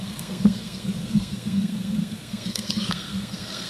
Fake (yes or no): yes